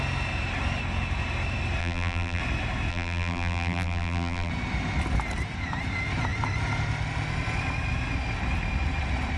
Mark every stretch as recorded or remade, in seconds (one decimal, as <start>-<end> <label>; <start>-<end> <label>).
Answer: 0.0-1.8 recorded; 1.8-2.4 remade; 2.4-2.9 recorded; 2.9-4.5 remade; 4.5-9.4 recorded